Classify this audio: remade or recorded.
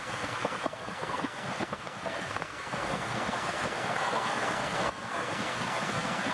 remade